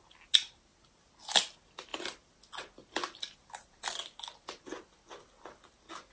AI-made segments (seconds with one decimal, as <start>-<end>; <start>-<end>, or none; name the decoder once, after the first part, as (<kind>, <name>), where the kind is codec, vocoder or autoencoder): none